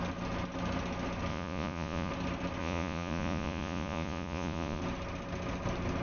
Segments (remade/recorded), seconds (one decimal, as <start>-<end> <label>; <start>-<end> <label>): 0.0-1.3 recorded; 1.3-2.1 remade; 2.1-2.6 recorded; 2.6-4.8 remade; 4.8-6.0 recorded